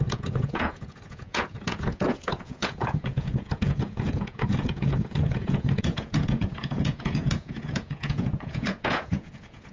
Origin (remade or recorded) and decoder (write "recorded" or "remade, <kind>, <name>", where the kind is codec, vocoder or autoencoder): remade, vocoder, Vocos